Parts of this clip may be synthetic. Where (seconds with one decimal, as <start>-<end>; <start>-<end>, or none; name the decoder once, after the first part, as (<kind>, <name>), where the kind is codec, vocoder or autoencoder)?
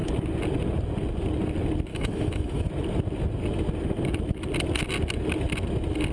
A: 1.9-2.7 (autoencoder, DAC-VAE)